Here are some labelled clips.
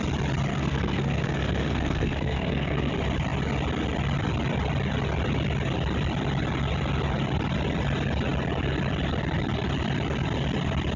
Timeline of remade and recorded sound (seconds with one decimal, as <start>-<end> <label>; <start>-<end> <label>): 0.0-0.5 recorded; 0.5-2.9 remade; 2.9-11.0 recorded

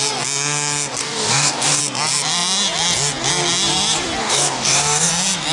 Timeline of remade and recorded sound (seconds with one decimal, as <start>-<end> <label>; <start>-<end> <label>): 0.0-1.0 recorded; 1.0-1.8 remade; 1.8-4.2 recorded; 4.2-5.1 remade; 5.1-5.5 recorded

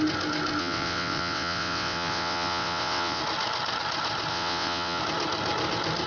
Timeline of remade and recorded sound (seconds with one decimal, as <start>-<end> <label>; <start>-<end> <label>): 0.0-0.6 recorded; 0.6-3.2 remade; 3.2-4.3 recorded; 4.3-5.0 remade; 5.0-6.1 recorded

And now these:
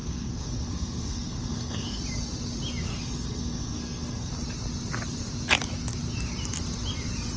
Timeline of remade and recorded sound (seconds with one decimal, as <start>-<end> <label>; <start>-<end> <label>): 0.0-2.0 remade; 2.0-2.9 recorded; 2.9-4.3 remade; 4.3-7.4 recorded